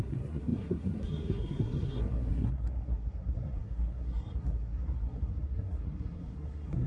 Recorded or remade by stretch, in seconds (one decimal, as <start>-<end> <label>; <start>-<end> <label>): 0.0-6.9 remade

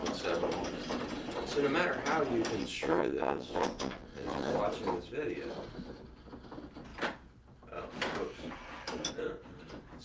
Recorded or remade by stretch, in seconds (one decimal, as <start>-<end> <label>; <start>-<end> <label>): 0.0-2.6 recorded; 2.6-4.5 remade; 4.5-10.0 recorded